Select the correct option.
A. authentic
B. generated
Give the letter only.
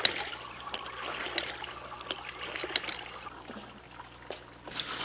A